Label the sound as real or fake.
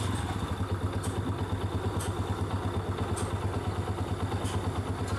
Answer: real